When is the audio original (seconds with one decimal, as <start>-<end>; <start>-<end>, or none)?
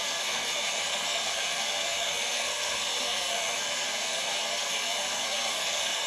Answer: none